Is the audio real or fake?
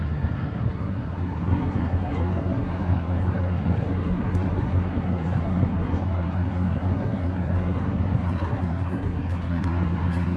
fake